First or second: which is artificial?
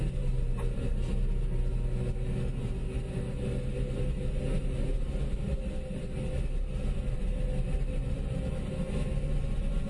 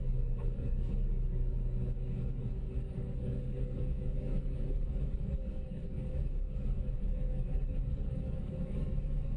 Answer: second